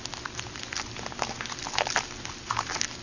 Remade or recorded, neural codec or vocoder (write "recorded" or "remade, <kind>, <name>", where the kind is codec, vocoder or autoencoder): recorded